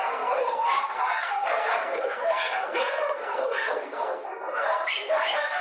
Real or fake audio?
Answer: fake